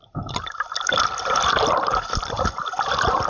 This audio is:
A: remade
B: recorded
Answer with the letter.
B